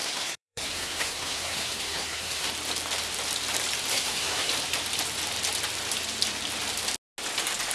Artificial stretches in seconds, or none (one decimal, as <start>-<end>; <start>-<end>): 0.0-2.5; 3.9-4.5